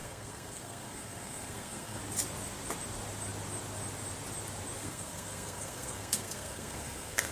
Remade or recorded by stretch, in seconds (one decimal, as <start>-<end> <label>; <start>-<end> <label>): 0.0-2.0 remade; 2.0-4.8 recorded; 4.8-7.3 remade